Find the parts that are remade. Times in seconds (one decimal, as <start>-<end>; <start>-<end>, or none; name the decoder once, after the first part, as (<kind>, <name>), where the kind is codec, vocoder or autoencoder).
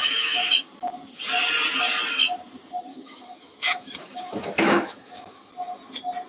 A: 0.0-0.5 (autoencoder, DAC-VAE); 2.9-5.5